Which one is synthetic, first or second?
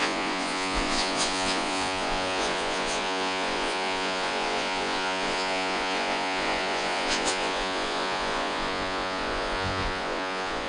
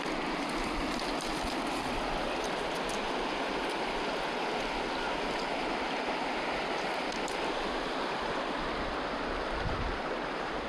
first